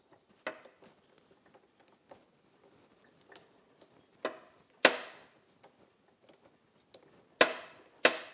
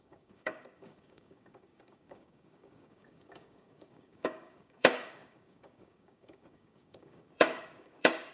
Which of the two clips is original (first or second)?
first